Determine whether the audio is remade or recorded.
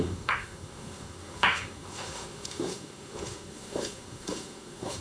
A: remade